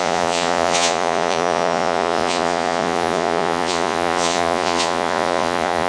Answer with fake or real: fake